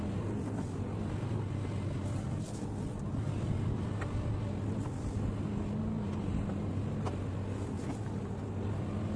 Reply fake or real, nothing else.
real